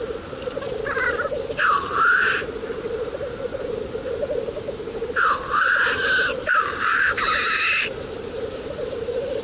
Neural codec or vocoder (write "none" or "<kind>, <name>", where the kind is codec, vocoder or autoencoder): none